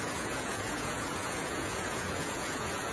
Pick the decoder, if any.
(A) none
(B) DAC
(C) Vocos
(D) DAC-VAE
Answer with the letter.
C